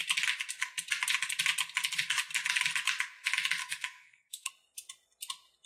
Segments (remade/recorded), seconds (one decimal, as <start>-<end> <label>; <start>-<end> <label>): 0.0-3.6 recorded; 3.6-4.5 remade; 4.5-5.7 recorded